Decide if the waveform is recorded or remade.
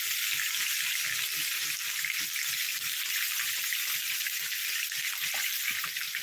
recorded